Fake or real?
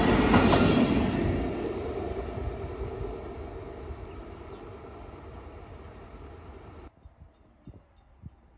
real